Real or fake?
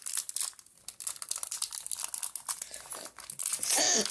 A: real